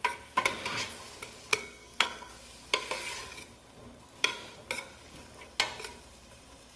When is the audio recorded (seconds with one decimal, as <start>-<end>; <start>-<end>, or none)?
0.0-1.5; 2.3-6.8